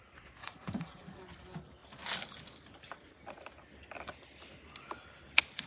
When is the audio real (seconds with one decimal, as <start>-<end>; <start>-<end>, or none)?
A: 0.0-0.4; 1.2-5.7